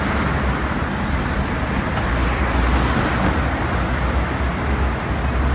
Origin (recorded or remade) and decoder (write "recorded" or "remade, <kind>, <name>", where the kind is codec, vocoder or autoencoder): recorded